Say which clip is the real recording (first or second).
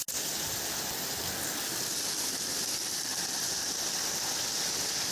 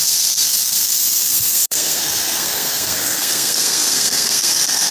first